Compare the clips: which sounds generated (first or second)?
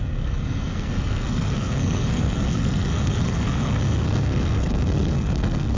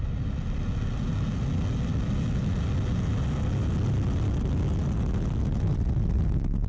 first